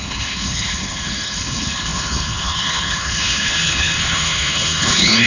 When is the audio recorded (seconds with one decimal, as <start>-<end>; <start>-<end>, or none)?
none